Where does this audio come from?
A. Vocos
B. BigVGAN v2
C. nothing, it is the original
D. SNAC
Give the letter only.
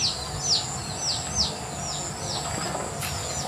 C